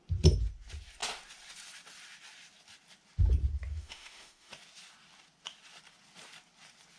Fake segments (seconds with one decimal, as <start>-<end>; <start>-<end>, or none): 3.7-4.5

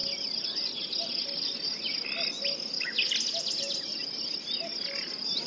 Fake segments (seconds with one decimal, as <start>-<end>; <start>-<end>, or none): none

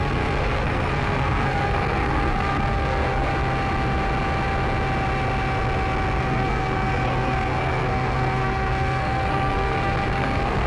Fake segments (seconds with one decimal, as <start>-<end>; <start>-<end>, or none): 0.0-3.3; 6.2-10.7

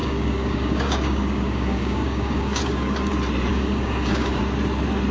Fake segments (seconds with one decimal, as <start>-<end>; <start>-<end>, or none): 0.0-3.1; 3.5-4.4

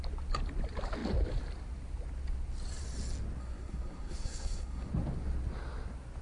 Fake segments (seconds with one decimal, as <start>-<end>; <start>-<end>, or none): 3.4-4.9

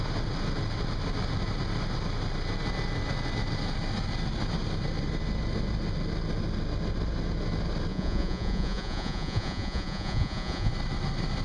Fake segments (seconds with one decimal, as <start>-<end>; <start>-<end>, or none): 7.9-10.7

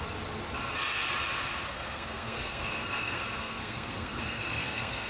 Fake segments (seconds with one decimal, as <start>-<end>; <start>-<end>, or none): 1.7-5.1